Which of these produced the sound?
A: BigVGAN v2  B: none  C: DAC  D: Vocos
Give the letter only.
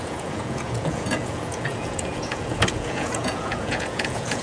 D